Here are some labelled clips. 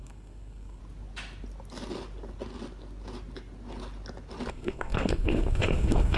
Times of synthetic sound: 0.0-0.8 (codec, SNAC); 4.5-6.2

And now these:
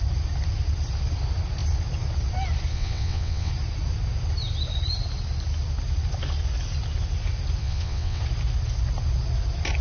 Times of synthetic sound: 2.7-3.5 (vocoder, WaveNeXt); 7.6-8.2

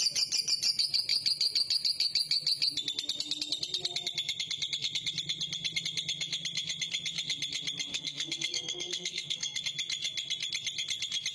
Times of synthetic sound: 7.9-9.6 (codec, SNAC)

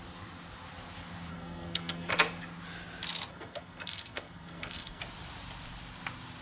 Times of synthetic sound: 1.3-2.1 (codec, SNAC); 3.3-5.0

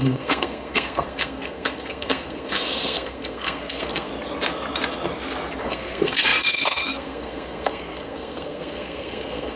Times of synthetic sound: 0.0-4.1 (codec, SNAC); 5.6-9.6

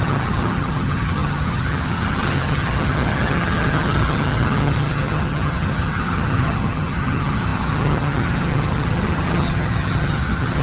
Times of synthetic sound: 0.0-10.6 (vocoder, HiFi-GAN)